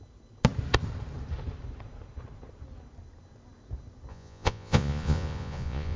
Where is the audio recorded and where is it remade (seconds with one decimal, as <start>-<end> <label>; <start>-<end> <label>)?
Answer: 0.0-4.1 recorded; 4.1-6.0 remade

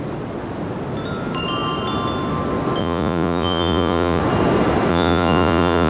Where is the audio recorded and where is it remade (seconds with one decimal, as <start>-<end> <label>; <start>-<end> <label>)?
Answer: 0.0-2.8 recorded; 2.8-4.2 remade; 4.2-4.9 recorded; 4.9-5.9 remade

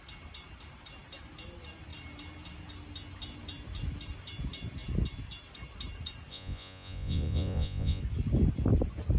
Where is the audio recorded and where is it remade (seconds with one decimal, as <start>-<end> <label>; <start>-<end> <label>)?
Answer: 0.0-6.3 recorded; 6.3-8.0 remade; 8.0-9.2 recorded